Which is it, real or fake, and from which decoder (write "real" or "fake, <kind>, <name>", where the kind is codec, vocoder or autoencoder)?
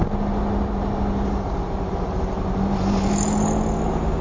real